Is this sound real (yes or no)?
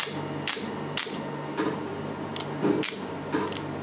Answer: yes